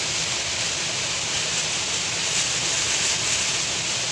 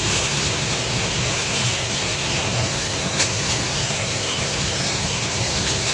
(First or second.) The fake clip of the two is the second